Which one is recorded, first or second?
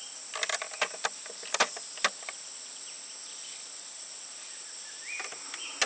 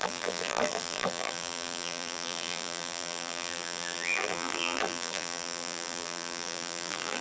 first